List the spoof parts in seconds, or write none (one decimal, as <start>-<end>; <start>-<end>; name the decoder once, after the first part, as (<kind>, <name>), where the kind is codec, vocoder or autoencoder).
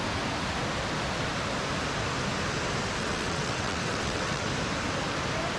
3.0-4.5 (vocoder, WaveNeXt)